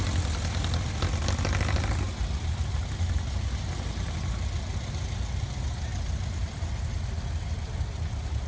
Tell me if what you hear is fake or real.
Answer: real